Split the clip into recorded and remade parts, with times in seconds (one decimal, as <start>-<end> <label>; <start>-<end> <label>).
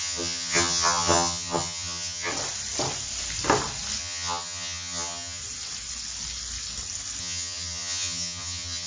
0.0-2.3 remade; 2.3-4.0 recorded; 4.0-5.4 remade; 5.4-7.2 recorded; 7.2-8.9 remade